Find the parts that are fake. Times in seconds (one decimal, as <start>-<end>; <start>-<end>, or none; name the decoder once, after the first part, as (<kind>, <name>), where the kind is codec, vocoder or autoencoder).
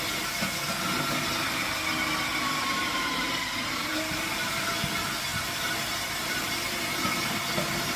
2.3-4.7 (vocoder, BigVGAN v2); 5.3-6.8